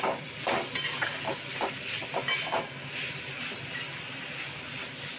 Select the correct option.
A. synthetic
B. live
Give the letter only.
B